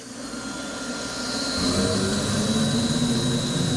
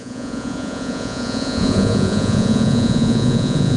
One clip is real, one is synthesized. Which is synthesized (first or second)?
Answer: second